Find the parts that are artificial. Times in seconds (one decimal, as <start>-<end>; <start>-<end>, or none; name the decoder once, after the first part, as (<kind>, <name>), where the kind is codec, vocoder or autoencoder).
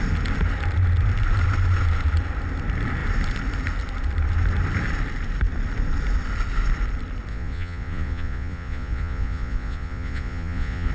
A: 7.3-10.9 (vocoder, Vocos)